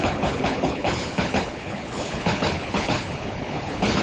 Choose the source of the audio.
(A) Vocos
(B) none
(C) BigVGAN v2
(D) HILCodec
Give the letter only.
D